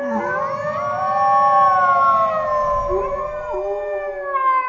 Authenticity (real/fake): real